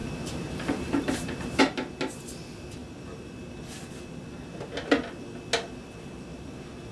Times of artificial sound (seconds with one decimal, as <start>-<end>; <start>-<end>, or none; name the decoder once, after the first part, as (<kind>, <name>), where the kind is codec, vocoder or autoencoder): 0.0-1.6 (vocoder, BigVGAN v2)